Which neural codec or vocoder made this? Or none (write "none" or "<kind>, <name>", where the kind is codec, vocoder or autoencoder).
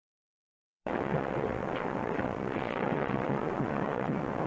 vocoder, WaveNeXt